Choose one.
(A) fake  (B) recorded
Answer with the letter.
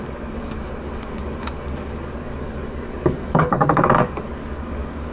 A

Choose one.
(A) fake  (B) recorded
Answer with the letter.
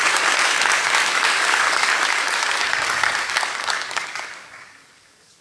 A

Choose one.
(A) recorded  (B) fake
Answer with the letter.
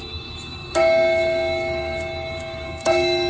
B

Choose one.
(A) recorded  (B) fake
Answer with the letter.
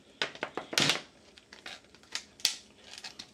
A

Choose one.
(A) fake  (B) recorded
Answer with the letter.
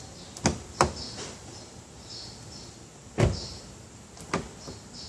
B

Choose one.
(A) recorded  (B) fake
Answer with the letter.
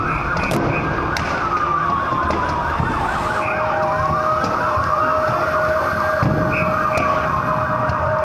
A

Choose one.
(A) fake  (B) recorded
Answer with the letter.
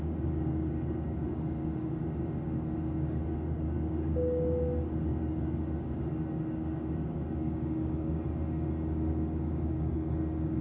A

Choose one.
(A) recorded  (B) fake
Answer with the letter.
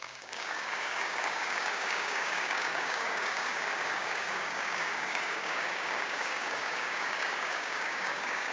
B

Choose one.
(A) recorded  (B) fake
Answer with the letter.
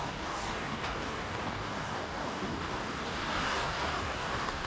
B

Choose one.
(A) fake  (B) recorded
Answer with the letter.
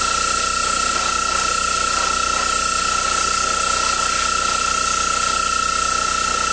B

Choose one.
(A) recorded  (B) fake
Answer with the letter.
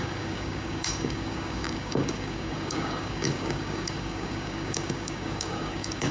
B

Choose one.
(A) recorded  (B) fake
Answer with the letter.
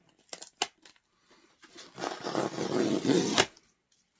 A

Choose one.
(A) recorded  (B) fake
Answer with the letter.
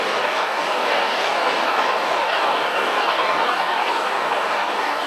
B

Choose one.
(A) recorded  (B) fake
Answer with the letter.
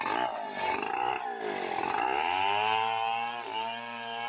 A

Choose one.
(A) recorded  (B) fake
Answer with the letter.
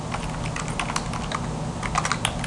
A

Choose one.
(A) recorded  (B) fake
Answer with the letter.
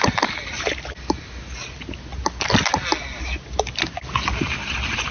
A